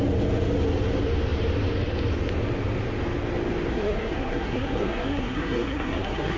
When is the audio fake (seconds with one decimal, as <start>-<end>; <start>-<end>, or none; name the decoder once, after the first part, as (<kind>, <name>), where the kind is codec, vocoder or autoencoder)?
3.7-6.4 (codec, SNAC)